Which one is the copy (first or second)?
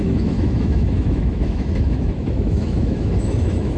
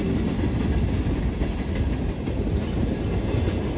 first